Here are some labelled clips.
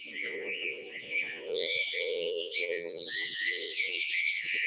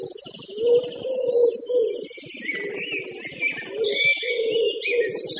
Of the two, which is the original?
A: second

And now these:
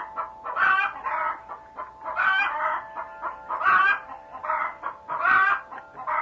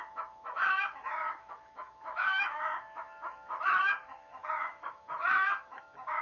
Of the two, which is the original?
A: first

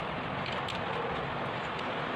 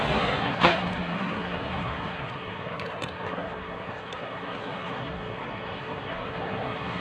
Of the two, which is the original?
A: first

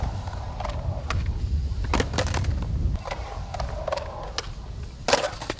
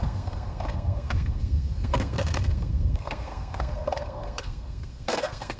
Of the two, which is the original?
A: first